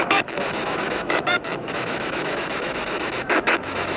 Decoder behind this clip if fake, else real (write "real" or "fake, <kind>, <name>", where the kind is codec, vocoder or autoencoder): fake, autoencoder, DAC-VAE